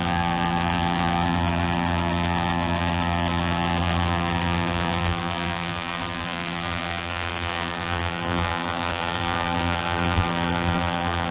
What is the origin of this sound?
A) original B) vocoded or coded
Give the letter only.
B